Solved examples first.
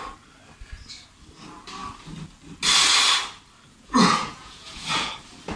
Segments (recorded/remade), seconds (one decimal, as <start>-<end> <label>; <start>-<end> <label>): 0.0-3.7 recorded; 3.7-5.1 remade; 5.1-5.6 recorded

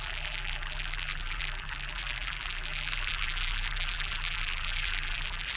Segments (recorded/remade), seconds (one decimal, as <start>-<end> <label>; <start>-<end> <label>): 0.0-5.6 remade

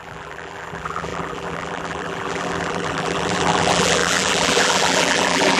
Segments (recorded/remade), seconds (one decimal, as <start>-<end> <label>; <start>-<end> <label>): 0.0-5.6 remade

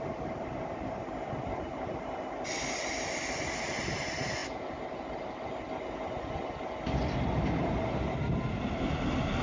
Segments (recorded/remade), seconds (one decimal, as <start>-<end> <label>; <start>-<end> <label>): 0.0-9.4 recorded

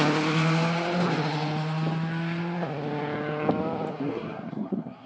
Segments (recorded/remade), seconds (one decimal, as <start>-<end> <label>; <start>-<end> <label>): 0.0-3.9 recorded; 3.9-5.1 remade

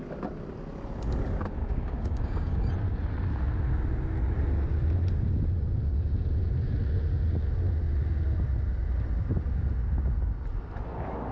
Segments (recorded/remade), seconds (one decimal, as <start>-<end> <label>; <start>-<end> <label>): 0.0-1.6 recorded; 1.6-2.7 remade; 2.7-11.3 recorded

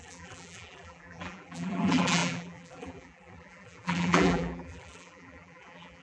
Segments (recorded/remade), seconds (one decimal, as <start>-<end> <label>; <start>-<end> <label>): 0.0-6.0 remade